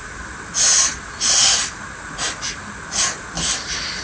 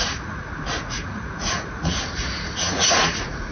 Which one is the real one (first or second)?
first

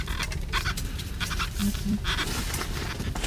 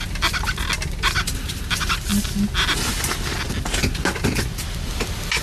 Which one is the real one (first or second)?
second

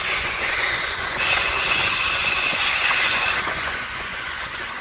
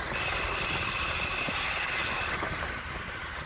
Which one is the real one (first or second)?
second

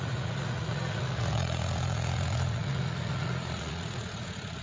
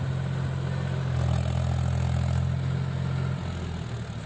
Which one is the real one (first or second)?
second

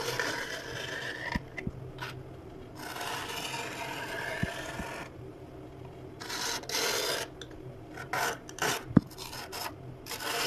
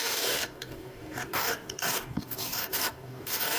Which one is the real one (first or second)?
first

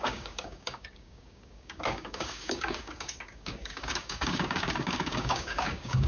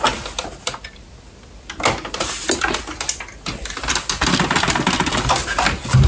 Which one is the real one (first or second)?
second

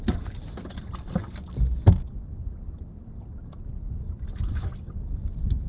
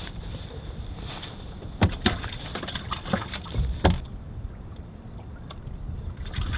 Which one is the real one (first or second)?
first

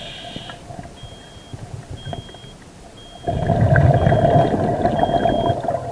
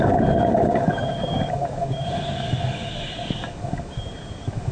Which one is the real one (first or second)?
first